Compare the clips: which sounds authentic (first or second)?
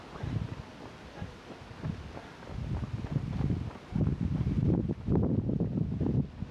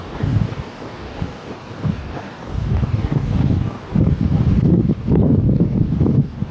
first